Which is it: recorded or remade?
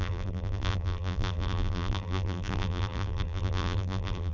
remade